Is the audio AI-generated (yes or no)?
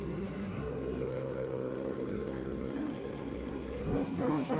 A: yes